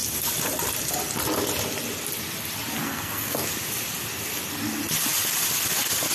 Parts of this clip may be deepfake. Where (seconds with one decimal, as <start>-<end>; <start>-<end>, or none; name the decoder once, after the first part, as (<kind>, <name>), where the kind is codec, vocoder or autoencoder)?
2.8-3.5 (codec, SNAC)